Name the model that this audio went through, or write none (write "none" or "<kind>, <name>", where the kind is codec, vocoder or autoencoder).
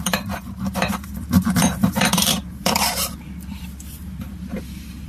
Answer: vocoder, BigVGAN v2